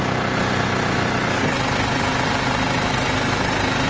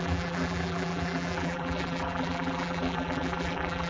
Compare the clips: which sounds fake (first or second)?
second